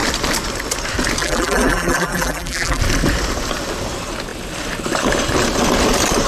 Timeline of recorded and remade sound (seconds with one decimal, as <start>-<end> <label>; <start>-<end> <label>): 0.0-1.2 recorded; 1.2-2.8 remade; 2.8-6.3 recorded